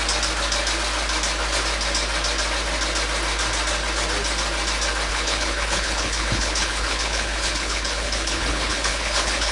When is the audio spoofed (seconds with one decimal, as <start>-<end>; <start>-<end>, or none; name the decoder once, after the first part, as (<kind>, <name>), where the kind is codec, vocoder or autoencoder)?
5.1-9.5 (codec, HILCodec)